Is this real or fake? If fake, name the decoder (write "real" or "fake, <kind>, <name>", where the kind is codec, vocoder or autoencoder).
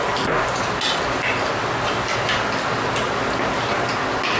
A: real